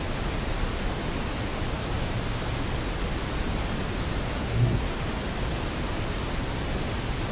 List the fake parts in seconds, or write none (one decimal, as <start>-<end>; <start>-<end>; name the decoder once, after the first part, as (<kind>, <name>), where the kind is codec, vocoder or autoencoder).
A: 4.4-5.0 (codec, SNAC)